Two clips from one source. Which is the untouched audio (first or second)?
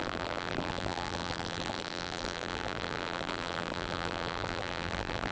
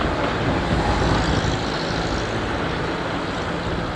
second